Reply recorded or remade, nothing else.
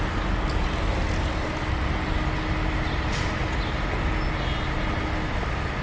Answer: recorded